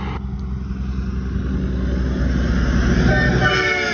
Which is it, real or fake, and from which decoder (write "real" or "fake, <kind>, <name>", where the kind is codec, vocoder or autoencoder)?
real